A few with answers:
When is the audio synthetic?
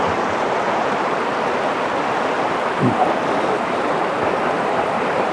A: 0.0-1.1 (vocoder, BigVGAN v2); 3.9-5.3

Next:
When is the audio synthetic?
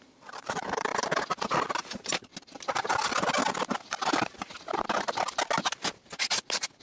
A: 0.0-0.9 (vocoder, BigVGAN v2); 1.7-2.3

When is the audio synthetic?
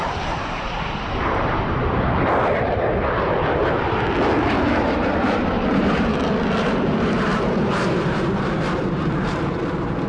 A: 0.0-1.8 (vocoder, BigVGAN v2); 4.8-6.1; 6.6-10.1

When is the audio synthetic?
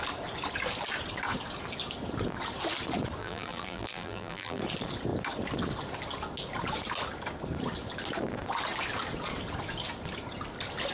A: 3.2-4.6 (vocoder, BigVGAN v2)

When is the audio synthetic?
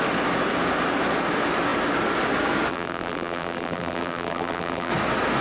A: 2.7-4.9 (vocoder, BigVGAN v2)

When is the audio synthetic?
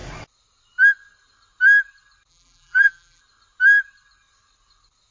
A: 2.3-3.2 (vocoder, BigVGAN v2)